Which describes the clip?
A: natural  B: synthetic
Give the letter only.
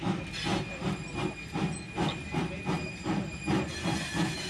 B